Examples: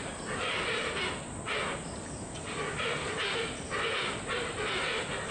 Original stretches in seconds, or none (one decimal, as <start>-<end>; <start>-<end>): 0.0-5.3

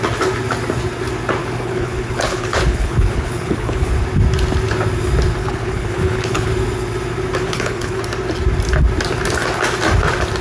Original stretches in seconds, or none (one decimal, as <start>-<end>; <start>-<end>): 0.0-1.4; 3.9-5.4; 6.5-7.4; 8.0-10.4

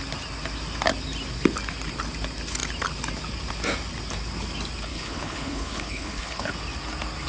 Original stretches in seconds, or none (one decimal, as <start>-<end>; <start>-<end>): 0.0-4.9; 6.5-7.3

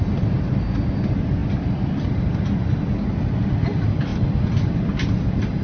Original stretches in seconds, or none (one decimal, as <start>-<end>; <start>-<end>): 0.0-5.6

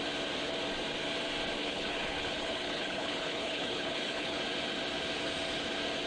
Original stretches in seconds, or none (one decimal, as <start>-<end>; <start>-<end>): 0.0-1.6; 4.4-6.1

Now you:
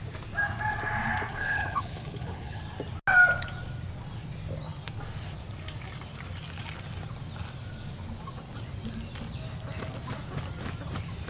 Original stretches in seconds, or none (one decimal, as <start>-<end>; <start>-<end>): 0.0-1.3; 2.6-11.3

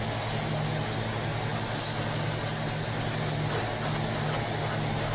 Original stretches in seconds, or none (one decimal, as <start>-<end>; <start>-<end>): 0.0-5.1